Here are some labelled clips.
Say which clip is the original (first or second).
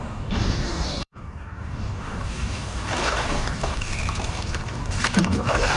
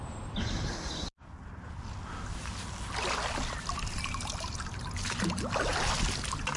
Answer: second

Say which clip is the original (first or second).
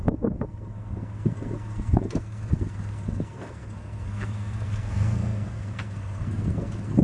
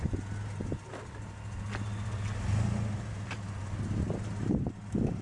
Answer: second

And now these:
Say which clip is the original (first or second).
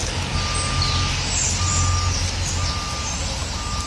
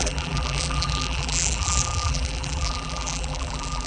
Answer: first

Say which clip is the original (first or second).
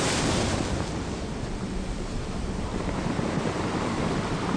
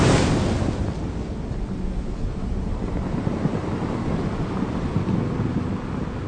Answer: second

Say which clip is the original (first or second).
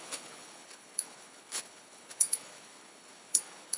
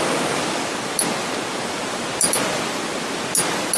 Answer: second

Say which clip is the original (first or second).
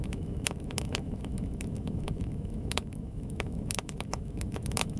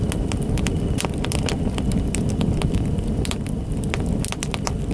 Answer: second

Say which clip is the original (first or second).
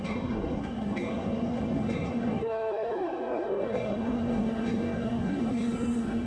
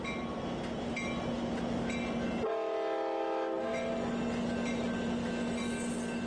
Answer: second